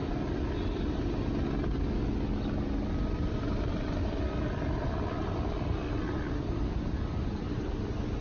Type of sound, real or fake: real